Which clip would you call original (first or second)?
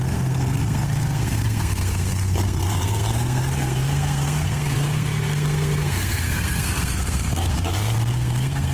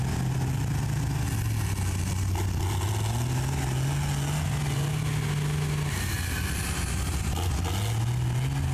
second